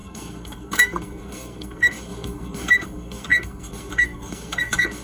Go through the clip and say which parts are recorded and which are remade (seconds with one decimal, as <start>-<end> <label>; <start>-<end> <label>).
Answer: 0.0-5.0 remade